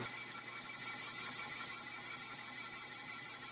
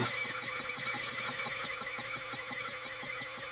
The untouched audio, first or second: first